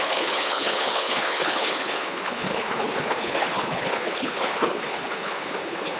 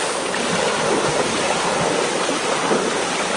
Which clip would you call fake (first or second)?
first